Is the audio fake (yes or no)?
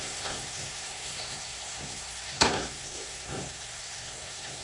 yes